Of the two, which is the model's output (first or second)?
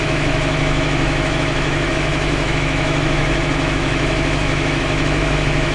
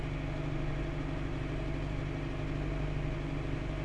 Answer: first